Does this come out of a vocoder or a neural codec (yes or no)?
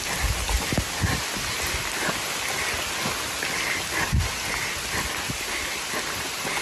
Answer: no